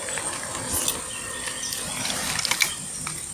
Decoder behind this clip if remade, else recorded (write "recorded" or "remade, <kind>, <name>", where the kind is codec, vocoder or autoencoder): recorded